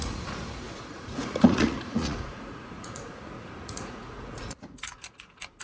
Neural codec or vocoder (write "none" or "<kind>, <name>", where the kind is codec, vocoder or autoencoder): vocoder, Vocos